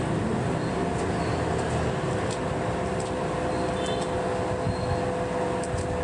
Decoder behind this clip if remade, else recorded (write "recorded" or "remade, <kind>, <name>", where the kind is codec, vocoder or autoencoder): remade, vocoder, BigVGAN v2